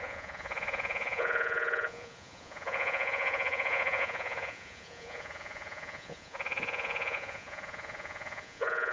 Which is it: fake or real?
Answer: fake